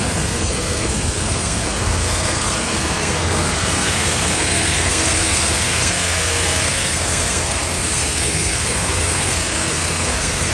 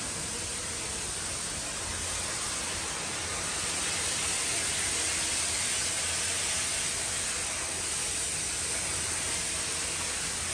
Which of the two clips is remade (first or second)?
first